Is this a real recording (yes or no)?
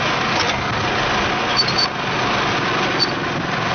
yes